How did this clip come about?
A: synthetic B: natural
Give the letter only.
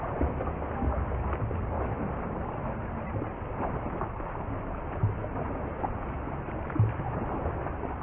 B